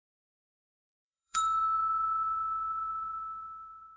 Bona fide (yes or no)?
no